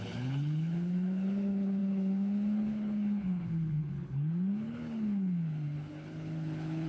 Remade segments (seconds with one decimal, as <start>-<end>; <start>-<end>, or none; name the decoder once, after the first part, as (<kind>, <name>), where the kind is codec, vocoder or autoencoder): 0.0-6.9 (codec, HILCodec)